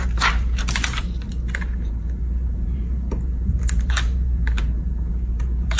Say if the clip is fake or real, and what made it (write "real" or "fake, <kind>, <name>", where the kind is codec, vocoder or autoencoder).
fake, vocoder, BigVGAN v2